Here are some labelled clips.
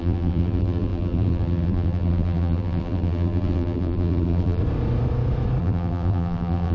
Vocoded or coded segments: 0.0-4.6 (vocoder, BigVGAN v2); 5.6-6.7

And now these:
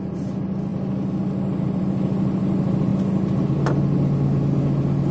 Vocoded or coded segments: none